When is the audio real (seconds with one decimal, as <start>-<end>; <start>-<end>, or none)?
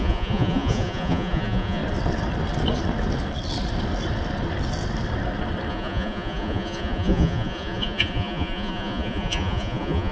1.8-5.7